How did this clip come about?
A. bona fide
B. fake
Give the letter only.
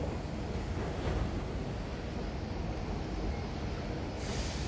A